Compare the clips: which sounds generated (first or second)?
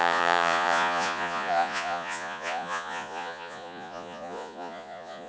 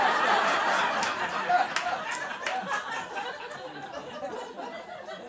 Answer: first